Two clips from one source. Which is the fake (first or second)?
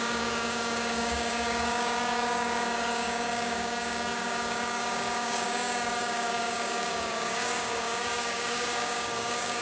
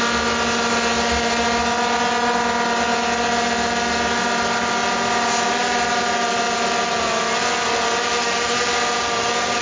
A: first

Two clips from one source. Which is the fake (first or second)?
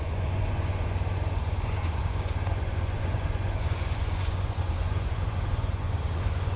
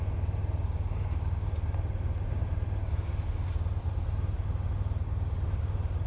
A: first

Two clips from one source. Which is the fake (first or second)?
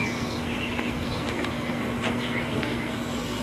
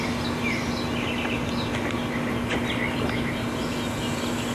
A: first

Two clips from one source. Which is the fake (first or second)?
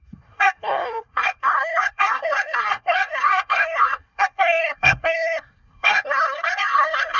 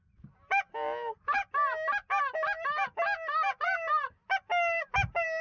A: first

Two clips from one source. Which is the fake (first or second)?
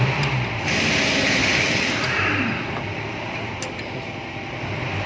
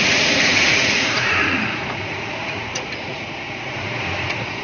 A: second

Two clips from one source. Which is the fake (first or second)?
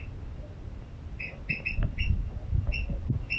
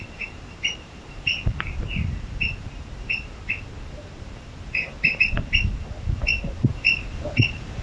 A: second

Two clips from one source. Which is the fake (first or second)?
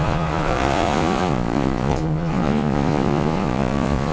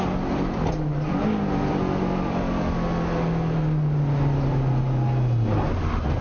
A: first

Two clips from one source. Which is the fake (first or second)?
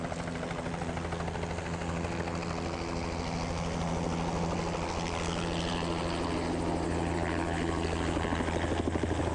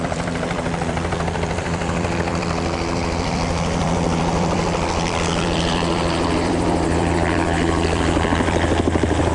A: second